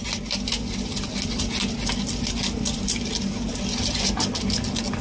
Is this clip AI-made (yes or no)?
no